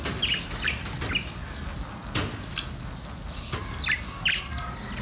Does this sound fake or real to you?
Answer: real